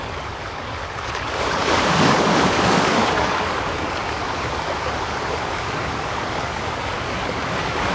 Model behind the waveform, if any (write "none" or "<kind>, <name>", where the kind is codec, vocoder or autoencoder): codec, DAC